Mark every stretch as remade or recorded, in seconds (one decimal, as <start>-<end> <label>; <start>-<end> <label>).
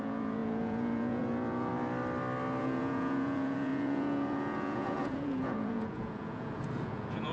0.0-1.7 remade; 1.7-2.6 recorded; 2.6-7.3 remade